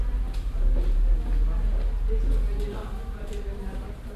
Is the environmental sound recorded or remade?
recorded